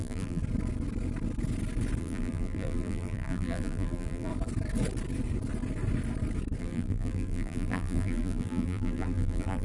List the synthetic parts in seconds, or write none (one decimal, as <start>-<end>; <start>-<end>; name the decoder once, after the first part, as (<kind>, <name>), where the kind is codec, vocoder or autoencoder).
0.0-0.4 (vocoder, BigVGAN v2); 2.0-4.3; 6.6-9.6